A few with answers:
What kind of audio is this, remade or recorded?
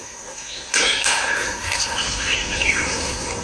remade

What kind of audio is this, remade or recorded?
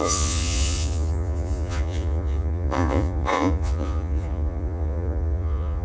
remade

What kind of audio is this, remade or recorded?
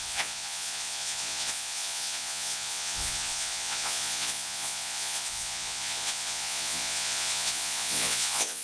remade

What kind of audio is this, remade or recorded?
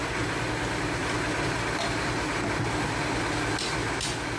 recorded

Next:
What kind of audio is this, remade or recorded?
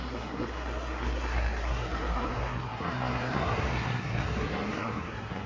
remade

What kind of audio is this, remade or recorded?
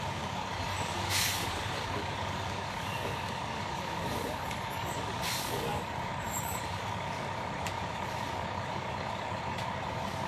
remade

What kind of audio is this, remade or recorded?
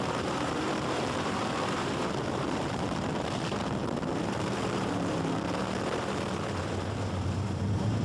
remade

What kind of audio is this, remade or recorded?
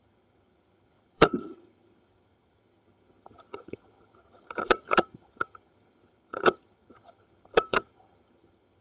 remade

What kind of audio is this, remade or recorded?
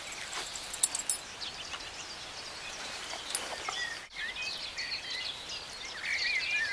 recorded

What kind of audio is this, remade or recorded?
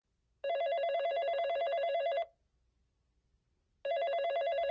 recorded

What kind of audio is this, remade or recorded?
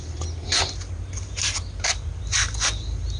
recorded